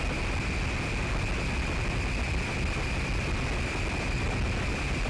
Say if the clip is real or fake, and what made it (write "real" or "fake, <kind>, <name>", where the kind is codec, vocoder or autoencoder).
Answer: real